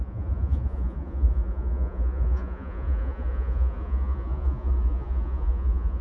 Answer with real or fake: fake